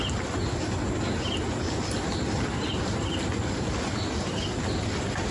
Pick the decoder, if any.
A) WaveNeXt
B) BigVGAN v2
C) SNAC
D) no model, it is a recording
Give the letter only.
D